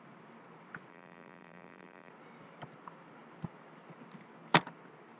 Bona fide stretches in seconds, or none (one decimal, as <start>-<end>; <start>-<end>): 0.0-0.9; 2.1-5.2